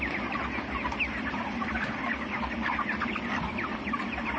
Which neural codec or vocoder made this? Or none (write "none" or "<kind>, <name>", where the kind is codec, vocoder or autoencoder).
none